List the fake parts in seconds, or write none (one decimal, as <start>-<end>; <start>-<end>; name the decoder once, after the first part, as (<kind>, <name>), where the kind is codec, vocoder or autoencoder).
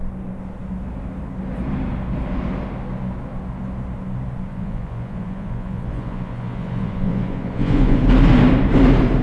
4.5-8.0 (vocoder, Vocos)